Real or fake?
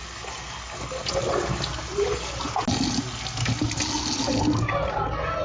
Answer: real